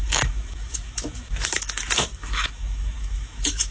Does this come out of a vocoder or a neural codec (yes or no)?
yes